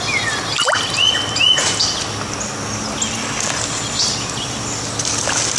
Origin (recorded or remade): recorded